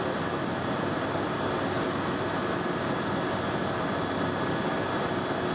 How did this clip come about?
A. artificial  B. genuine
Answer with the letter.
B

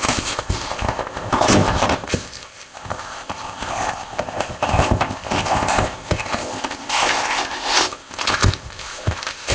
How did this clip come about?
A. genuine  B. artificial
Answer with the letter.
B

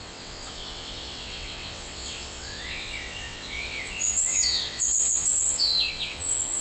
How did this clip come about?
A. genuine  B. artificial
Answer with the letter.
B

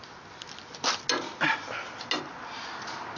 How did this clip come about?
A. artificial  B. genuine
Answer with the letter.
B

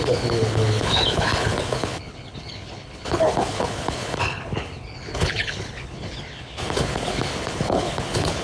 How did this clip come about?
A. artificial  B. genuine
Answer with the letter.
A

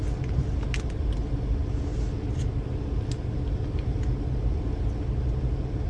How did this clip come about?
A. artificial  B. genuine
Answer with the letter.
B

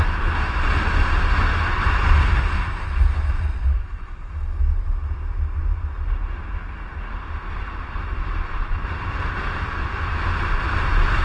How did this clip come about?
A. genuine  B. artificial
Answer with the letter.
A